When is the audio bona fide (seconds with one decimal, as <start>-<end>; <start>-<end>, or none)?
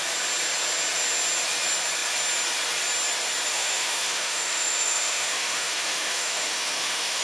0.0-3.5